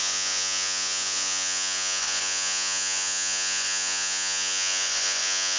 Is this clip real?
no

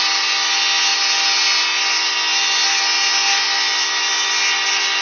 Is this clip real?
yes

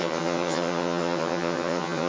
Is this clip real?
no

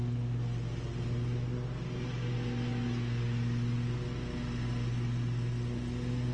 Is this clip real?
yes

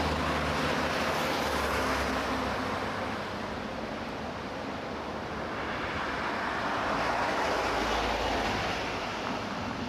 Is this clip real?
yes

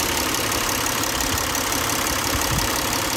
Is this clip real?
no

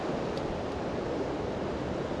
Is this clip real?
yes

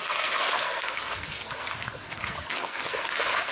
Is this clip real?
no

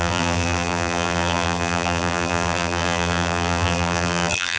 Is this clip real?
no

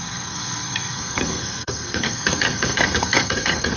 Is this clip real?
no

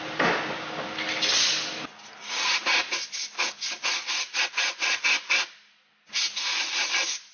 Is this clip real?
yes